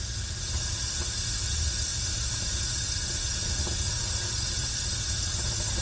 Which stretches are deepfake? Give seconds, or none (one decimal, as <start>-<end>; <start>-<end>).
1.9-4.1